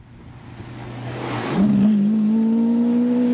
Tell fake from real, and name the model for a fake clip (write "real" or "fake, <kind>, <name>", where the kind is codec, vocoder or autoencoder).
real